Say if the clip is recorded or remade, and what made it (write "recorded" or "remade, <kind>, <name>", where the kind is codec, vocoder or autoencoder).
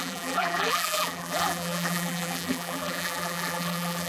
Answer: remade, vocoder, BigVGAN v2